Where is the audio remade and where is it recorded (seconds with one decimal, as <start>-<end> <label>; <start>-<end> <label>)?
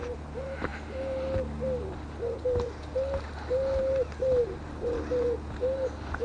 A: 0.0-6.2 recorded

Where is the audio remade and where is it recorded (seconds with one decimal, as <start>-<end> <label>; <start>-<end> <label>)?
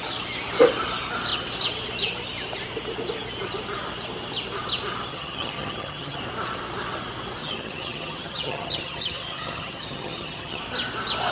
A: 0.0-5.1 recorded; 5.1-6.2 remade; 6.2-7.4 recorded; 7.4-10.6 remade; 10.6-11.3 recorded